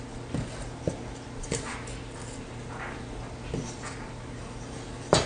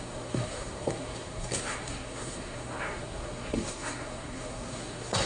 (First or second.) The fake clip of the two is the second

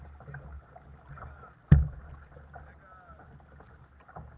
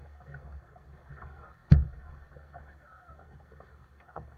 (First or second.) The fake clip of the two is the second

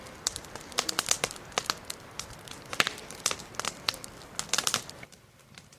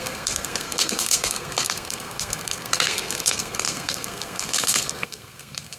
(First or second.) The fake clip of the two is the second